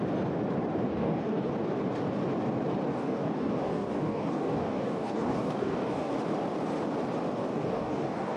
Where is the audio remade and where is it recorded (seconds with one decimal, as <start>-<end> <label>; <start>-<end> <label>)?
0.0-0.9 recorded; 0.9-1.5 remade; 1.5-2.9 recorded; 2.9-6.1 remade; 6.1-7.5 recorded; 7.5-8.4 remade